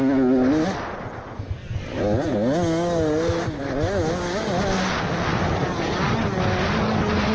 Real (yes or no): yes